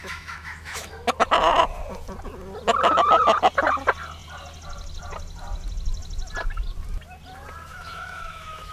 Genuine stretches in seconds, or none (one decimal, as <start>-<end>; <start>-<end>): 0.9-7.7